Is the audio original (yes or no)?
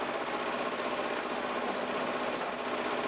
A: yes